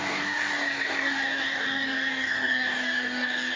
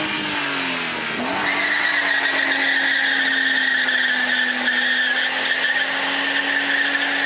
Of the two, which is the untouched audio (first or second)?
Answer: second